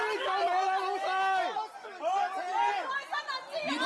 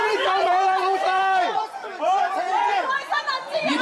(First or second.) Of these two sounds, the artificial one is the second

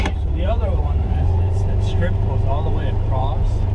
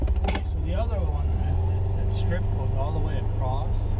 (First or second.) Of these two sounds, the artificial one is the first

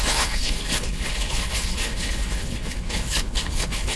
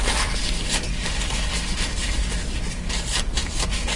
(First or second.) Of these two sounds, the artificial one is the first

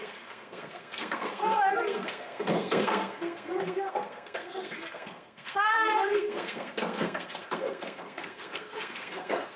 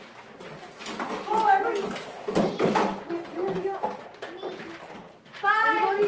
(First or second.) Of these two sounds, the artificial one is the first